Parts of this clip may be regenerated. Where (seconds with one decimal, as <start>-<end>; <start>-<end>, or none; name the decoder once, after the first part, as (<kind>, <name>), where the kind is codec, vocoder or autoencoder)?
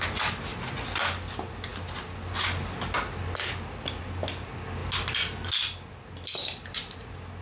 none